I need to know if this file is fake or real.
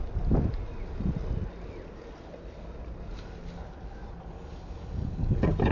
real